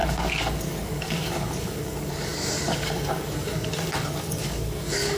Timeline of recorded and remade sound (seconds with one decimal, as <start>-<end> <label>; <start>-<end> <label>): 0.0-5.2 remade